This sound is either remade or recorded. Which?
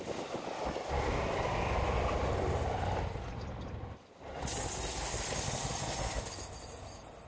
recorded